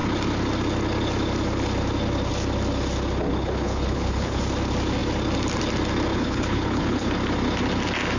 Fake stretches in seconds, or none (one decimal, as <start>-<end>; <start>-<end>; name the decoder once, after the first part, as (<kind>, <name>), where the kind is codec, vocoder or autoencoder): 3.3-4.4 (codec, HILCodec); 6.1-7.1

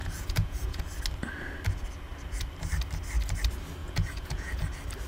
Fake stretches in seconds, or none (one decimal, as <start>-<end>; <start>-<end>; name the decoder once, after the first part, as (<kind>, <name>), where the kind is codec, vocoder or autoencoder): 0.0-0.8 (vocoder, Vocos); 3.8-4.6

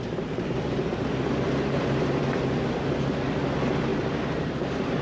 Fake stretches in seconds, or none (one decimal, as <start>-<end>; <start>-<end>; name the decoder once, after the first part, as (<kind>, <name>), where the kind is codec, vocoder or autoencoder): none